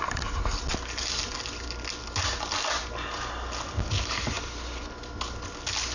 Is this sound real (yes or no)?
yes